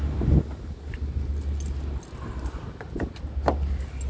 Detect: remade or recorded recorded